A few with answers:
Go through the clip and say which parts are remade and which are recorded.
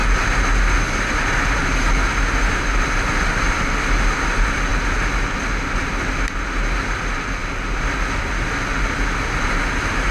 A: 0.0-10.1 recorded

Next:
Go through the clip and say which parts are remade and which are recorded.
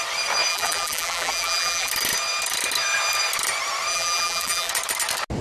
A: 0.0-0.5 recorded; 0.5-1.9 remade; 1.9-3.9 recorded; 3.9-4.7 remade; 4.7-5.4 recorded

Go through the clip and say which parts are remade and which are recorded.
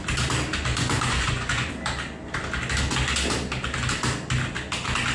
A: 0.0-0.7 recorded; 0.7-1.7 remade; 1.7-5.1 recorded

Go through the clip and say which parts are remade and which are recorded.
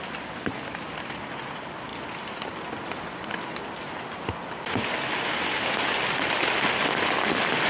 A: 0.0-7.7 recorded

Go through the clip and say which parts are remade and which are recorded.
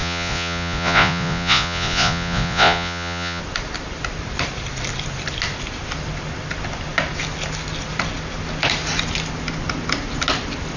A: 0.0-3.4 remade; 3.4-10.8 recorded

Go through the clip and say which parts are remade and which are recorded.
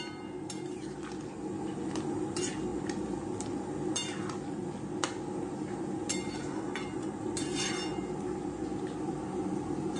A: 0.0-10.0 recorded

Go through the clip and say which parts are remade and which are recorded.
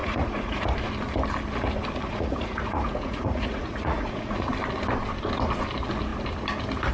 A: 0.0-0.6 remade; 0.6-2.1 recorded; 2.1-4.5 remade; 4.5-6.9 recorded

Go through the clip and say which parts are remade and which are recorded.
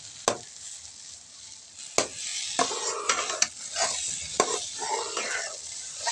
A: 0.0-6.1 recorded